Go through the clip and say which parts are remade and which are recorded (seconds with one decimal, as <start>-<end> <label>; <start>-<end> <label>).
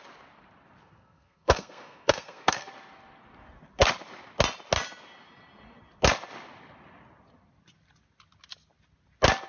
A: 0.0-0.8 recorded; 0.8-2.7 remade; 2.7-9.5 recorded